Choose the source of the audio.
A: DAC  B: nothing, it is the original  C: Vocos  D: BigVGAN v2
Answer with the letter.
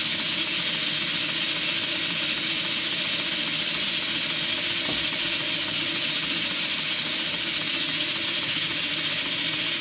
B